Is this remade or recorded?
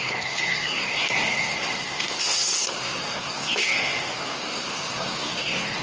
remade